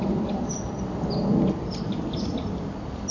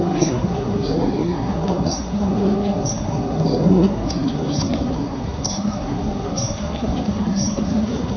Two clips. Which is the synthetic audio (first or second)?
second